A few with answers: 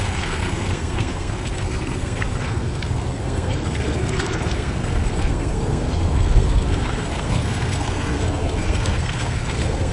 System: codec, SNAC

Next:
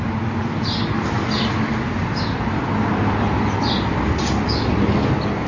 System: none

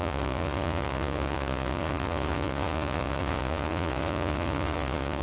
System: vocoder, Vocos